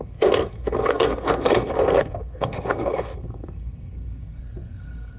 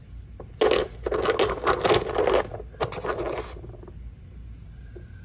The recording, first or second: second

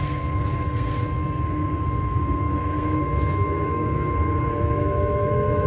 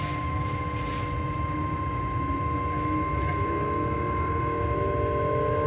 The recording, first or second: second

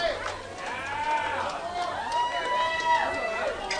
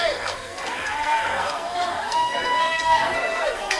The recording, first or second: first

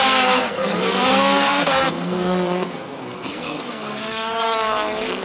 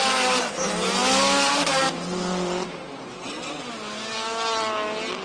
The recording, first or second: second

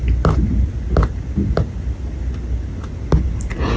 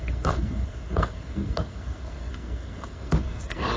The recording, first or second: first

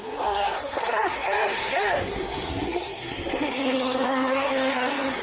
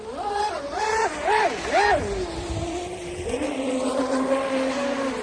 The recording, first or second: second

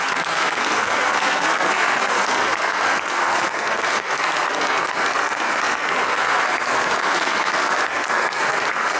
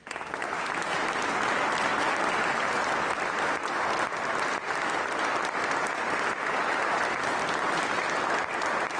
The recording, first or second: second